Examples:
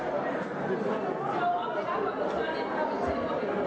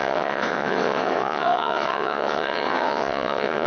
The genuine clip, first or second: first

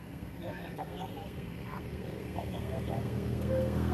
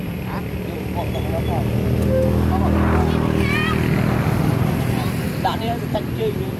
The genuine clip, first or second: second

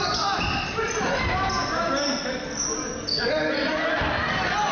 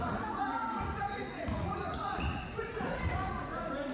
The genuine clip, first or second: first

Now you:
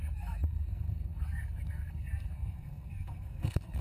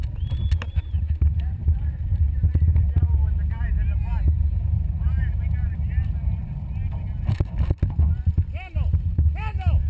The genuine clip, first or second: second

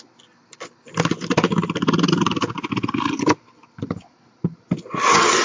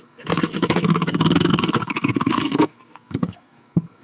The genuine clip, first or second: first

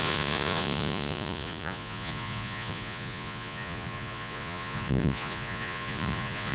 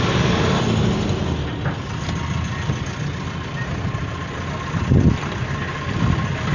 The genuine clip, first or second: second